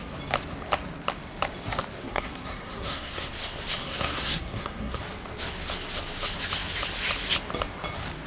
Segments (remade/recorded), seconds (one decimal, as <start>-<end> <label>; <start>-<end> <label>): 0.0-2.0 recorded; 2.0-3.3 remade; 3.3-3.8 recorded; 3.8-5.0 remade; 5.0-8.3 recorded